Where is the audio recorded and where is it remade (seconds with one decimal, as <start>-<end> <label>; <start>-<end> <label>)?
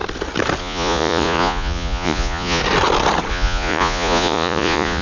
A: 0.0-0.6 recorded; 0.6-2.6 remade; 2.6-3.3 recorded; 3.3-5.0 remade